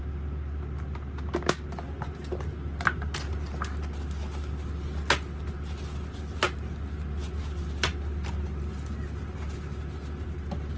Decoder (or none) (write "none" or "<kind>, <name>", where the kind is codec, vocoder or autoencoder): none